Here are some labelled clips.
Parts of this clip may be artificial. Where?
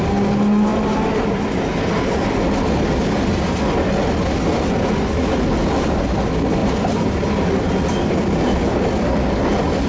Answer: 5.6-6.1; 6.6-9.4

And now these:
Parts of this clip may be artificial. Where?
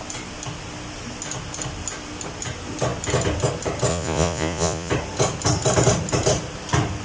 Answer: 3.9-4.9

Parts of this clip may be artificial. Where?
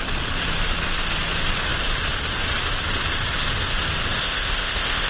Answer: 4.2-5.1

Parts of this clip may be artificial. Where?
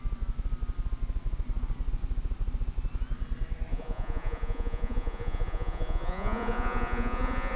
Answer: 3.7-7.6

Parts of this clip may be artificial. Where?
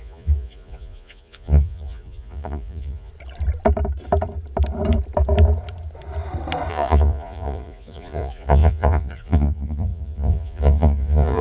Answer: 0.0-3.1; 6.7-11.4